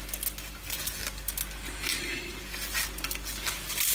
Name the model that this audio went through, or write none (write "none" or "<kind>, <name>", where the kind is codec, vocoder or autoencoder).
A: none